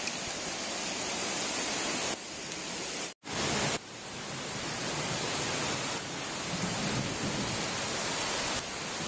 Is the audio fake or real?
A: real